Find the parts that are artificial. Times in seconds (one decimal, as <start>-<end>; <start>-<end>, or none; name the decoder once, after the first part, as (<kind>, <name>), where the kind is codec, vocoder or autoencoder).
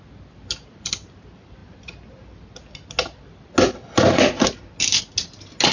none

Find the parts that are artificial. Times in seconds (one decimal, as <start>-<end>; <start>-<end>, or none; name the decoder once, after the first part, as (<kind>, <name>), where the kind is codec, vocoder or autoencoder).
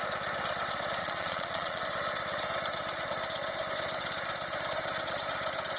1.0-1.8 (vocoder, Vocos)